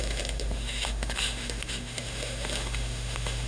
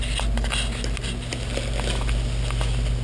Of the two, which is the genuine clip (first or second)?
second